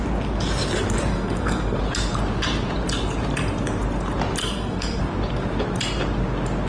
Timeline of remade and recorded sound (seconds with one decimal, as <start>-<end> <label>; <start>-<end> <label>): 0.0-1.1 recorded; 1.1-1.8 remade; 1.8-4.4 recorded; 4.4-5.0 remade; 5.0-6.7 recorded